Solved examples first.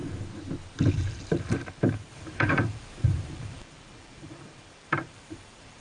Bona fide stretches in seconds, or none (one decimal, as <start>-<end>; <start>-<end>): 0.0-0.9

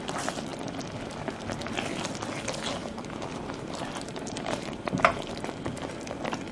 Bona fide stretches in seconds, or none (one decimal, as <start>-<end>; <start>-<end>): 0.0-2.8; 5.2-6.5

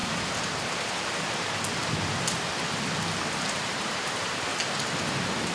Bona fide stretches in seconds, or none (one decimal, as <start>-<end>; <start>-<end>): 0.0-3.3; 4.5-5.5

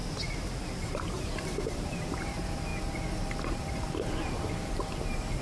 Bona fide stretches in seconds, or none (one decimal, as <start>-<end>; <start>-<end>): 0.0-0.8; 2.7-3.5

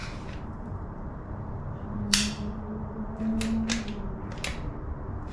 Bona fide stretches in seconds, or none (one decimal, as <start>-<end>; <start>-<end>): 3.2-5.3